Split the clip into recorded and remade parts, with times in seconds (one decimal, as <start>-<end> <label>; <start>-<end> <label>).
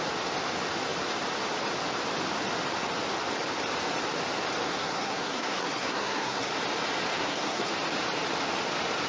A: 0.0-4.7 recorded; 4.7-6.5 remade; 6.5-7.2 recorded; 7.2-7.7 remade; 7.7-9.1 recorded